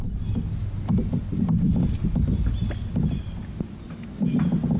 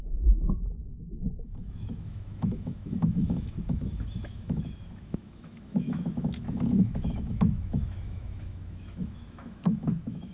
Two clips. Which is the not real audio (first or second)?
second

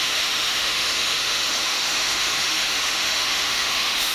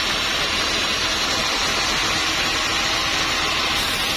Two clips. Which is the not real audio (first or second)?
first